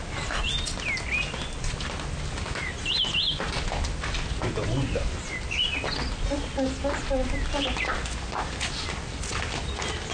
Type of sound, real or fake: real